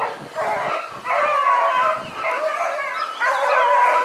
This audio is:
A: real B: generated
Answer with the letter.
A